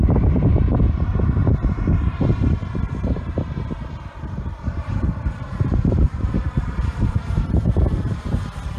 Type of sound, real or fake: fake